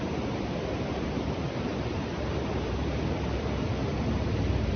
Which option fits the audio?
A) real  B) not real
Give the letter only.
B